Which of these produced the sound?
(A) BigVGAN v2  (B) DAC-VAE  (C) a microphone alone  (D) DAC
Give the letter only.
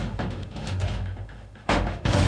B